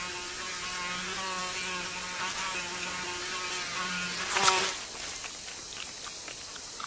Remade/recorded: recorded